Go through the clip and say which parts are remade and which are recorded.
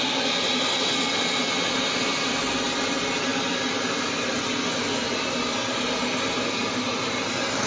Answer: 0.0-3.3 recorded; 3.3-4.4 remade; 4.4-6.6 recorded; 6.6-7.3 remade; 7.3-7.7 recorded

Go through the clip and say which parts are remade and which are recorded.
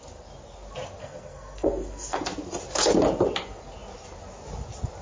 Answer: 0.0-1.0 recorded; 1.0-2.2 remade; 2.2-5.0 recorded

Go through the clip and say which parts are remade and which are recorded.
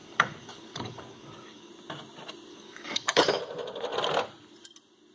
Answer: 0.0-1.7 remade; 1.7-2.5 recorded; 2.5-3.4 remade; 3.4-5.1 recorded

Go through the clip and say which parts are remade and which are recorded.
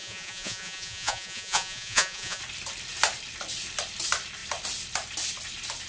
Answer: 0.0-2.4 remade; 2.4-5.9 recorded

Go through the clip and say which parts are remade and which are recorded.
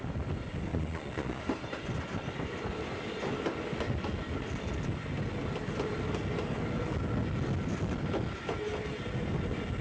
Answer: 0.0-0.7 recorded; 0.7-1.4 remade; 1.4-9.8 recorded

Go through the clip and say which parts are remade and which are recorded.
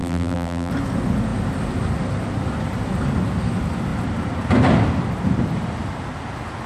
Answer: 0.0-0.7 remade; 0.7-6.7 recorded